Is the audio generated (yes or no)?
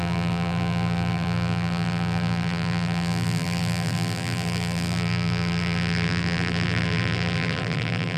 yes